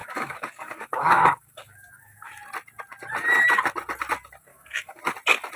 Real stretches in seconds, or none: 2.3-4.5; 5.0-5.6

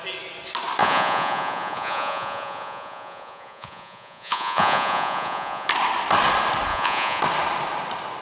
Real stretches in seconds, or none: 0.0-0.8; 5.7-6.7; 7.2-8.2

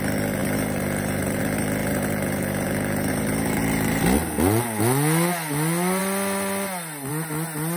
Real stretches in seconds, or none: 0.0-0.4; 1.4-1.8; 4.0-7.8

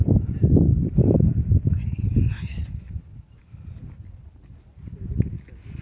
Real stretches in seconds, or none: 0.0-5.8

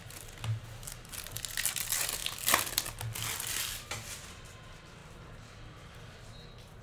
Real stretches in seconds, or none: 0.0-6.8